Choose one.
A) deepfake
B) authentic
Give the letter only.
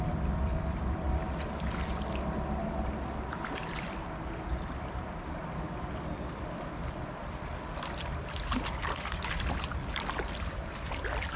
B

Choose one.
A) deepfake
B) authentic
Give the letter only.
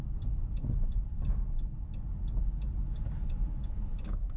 B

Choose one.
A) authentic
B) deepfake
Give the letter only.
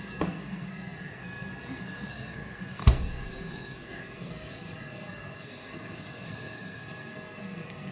B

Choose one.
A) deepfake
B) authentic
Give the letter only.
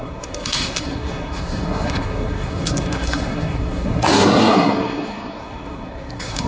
A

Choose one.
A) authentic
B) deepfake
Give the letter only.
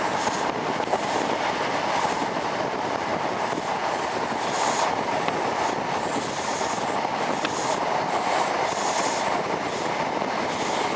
A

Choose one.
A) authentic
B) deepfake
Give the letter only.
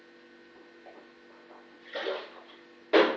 A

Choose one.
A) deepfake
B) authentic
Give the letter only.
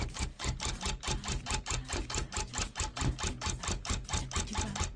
B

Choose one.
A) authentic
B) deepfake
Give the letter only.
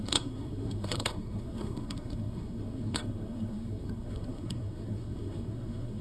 B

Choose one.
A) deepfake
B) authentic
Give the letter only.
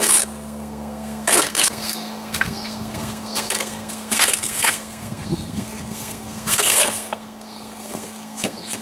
A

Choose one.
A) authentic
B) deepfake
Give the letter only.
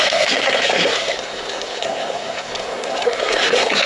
B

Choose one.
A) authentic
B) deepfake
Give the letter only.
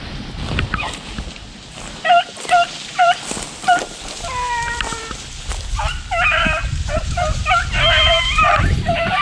A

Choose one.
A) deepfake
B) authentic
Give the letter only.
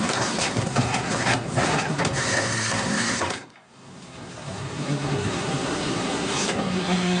A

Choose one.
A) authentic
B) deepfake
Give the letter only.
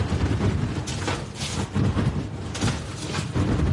A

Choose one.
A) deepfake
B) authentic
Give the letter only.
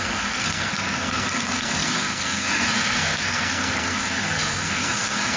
A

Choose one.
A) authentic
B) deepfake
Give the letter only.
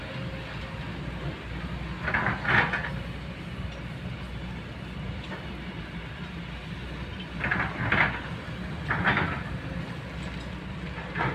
A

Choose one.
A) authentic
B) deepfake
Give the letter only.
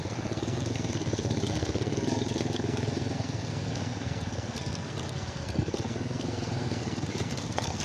B